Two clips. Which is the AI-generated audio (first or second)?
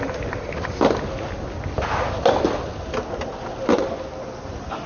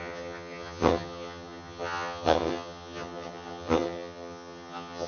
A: second